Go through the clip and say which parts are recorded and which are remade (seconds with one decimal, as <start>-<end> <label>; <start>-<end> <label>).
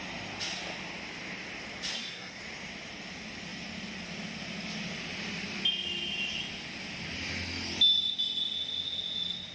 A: 0.0-1.9 recorded; 1.9-2.4 remade; 2.4-9.5 recorded